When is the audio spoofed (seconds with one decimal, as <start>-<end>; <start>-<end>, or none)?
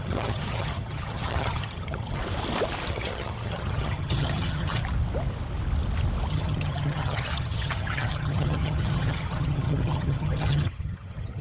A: 0.0-2.2; 2.9-4.8; 6.3-11.4